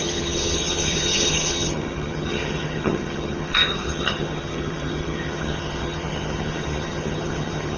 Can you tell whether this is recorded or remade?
remade